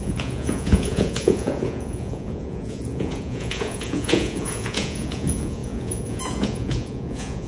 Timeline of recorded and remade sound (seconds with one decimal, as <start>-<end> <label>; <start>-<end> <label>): 0.0-7.5 remade